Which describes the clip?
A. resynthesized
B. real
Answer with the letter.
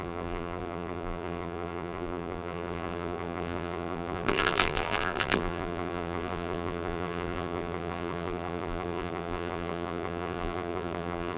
A